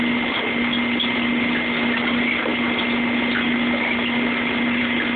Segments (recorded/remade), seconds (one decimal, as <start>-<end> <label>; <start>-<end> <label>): 0.0-5.2 recorded